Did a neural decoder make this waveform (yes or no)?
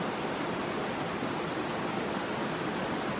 no